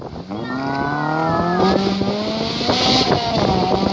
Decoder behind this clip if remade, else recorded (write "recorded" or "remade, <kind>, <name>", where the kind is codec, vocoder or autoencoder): recorded